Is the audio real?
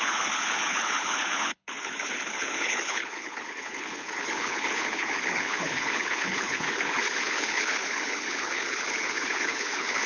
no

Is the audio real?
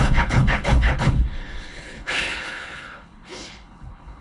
no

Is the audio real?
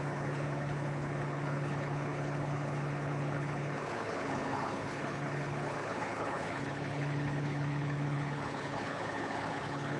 no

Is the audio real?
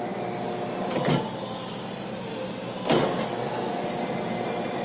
yes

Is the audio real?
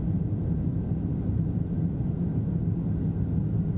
yes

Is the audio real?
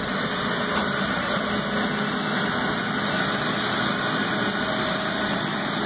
yes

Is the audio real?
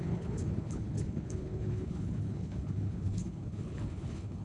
no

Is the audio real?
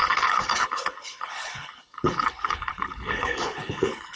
no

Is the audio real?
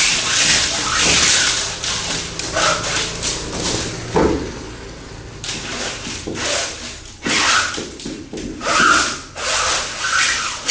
yes